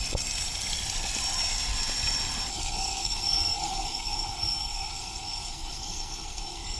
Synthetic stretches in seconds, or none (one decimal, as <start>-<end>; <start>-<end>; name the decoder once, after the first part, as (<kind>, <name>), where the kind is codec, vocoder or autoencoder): 2.5-6.8 (codec, SNAC)